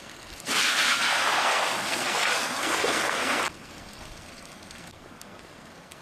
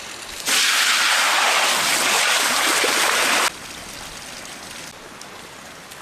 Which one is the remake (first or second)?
first